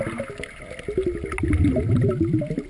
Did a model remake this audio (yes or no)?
no